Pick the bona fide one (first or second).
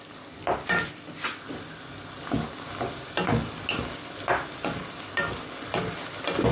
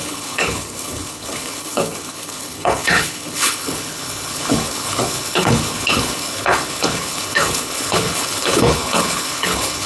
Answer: first